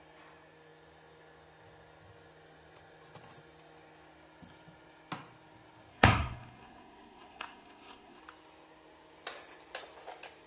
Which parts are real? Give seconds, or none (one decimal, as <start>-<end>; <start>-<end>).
0.0-5.9; 8.2-10.5